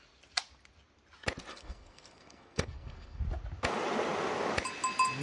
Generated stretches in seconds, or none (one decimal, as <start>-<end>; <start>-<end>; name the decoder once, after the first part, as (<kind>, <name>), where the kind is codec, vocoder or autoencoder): 1.5-3.2 (codec, SNAC)